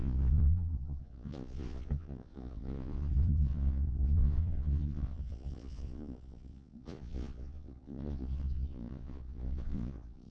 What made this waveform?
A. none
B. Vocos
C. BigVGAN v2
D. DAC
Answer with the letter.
B